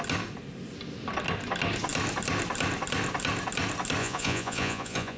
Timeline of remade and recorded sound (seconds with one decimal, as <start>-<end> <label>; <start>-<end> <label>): 0.0-4.0 recorded; 4.0-5.2 remade